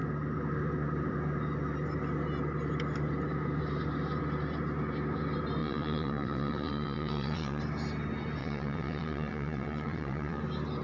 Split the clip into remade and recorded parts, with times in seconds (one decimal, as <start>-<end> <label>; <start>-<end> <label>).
0.0-5.6 recorded; 5.6-7.6 remade; 7.6-8.4 recorded; 8.4-10.4 remade; 10.4-10.8 recorded